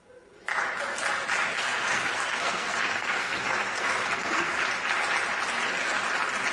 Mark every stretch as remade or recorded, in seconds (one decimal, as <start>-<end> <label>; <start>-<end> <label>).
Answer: 0.0-1.5 recorded; 1.5-4.5 remade; 4.5-6.5 recorded